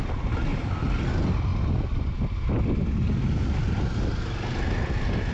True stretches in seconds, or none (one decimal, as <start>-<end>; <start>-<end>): 0.0-0.5; 1.1-5.3